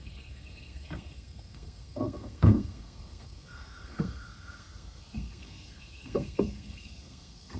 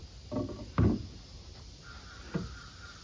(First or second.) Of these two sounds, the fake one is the first